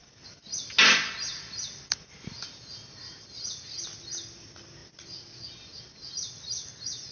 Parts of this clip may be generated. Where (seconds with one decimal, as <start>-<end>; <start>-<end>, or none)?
none